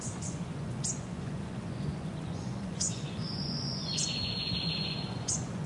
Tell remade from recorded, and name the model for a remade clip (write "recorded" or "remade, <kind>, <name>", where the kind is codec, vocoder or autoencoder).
remade, vocoder, Vocos